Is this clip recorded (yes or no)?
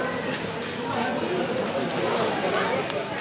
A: yes